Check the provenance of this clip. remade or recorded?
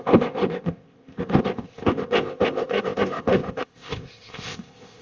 remade